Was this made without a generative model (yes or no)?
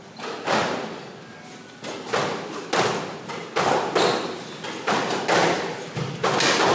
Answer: yes